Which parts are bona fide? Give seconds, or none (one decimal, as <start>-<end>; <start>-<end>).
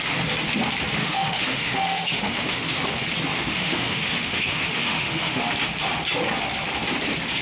0.0-1.0; 2.8-3.3; 5.4-7.4